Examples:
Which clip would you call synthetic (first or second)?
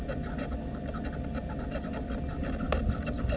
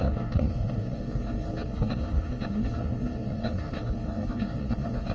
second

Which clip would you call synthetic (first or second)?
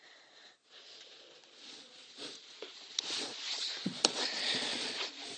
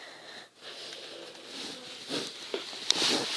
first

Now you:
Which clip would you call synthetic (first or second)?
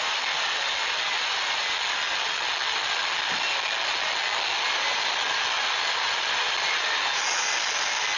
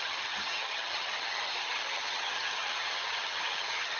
second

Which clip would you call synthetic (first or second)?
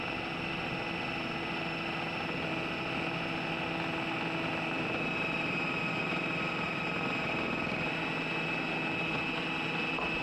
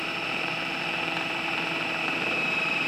second